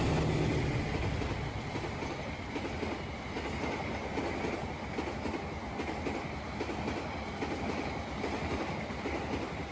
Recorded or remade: recorded